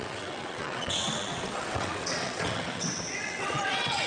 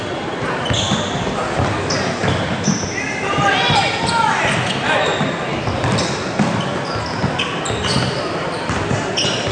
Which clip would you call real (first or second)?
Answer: second